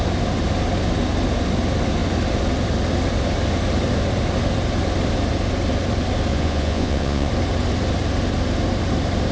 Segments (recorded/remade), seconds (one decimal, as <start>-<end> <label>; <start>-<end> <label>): 0.0-6.3 recorded; 6.3-7.3 remade; 7.3-9.3 recorded